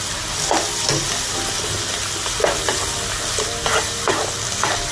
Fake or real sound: real